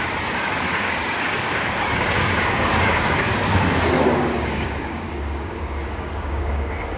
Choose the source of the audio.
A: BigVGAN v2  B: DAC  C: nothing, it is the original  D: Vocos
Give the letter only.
B